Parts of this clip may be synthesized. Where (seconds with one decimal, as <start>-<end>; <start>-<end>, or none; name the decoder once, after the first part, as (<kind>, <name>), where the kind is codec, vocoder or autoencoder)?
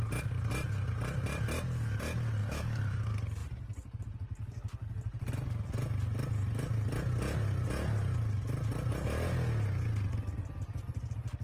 2.4-3.0 (codec, DAC)